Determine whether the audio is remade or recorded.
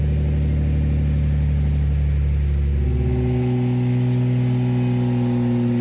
recorded